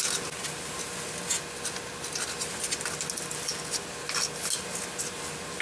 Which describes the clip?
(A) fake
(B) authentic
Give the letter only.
B